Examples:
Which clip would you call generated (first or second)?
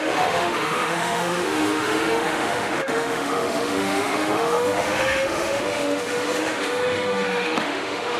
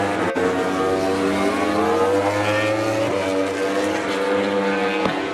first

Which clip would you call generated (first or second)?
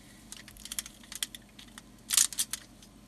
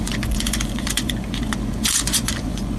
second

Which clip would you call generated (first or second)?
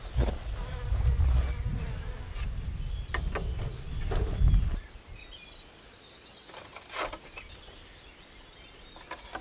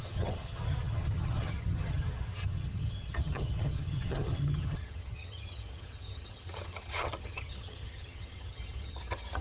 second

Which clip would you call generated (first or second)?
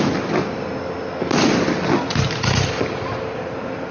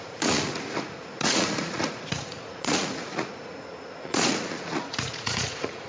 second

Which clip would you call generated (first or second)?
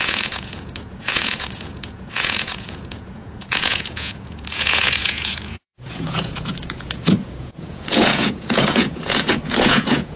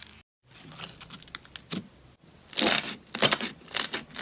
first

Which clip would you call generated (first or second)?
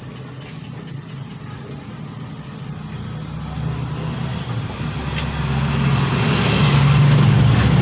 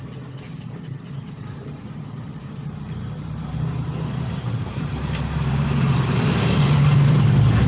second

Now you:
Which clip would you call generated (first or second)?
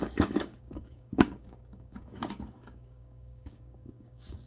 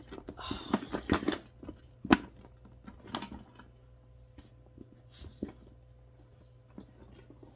first